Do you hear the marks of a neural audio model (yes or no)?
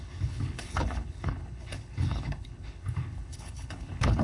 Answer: yes